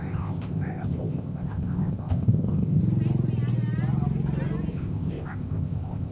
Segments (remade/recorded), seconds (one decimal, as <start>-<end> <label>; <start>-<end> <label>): 0.0-2.8 remade; 2.8-4.7 recorded; 4.7-6.1 remade